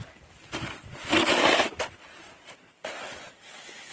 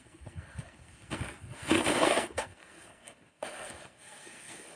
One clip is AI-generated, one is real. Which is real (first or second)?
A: first